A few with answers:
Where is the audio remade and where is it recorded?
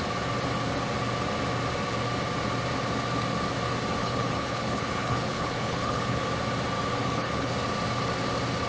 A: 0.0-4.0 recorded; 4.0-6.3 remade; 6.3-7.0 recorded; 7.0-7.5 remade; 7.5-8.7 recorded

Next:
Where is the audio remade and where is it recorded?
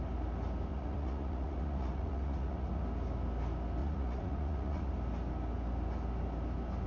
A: 0.0-0.7 recorded; 0.7-2.8 remade; 2.8-3.8 recorded; 3.8-4.9 remade; 4.9-6.9 recorded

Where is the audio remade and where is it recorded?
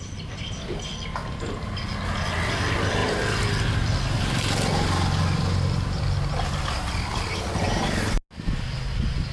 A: 0.0-9.3 recorded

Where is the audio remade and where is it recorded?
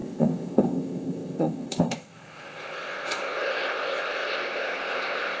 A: 0.0-5.4 remade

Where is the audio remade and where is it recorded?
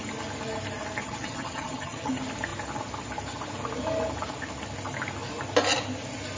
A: 0.0-1.0 recorded; 1.0-2.1 remade; 2.1-6.4 recorded